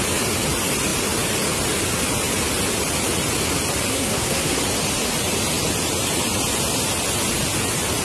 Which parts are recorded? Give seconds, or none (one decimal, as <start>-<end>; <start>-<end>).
0.0-3.9; 4.6-8.0